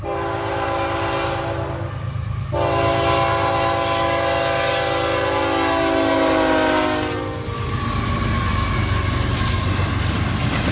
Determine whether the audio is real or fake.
real